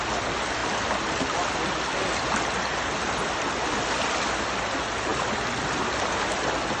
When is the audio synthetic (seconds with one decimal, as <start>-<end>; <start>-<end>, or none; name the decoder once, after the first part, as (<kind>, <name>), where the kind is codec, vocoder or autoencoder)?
none